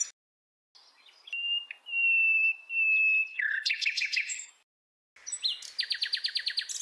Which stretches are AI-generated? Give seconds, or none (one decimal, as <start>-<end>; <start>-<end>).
3.3-4.5